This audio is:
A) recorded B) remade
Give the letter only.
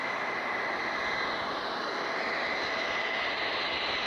A